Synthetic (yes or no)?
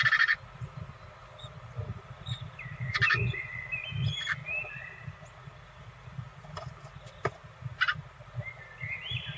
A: no